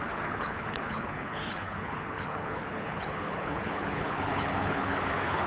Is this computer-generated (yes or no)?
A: yes